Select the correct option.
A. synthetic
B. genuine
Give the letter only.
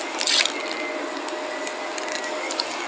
B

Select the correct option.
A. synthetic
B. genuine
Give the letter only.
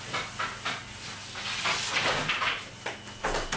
B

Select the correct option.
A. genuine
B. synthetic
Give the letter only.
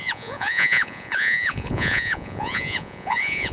B